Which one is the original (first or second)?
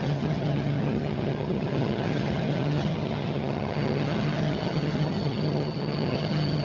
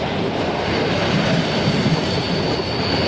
second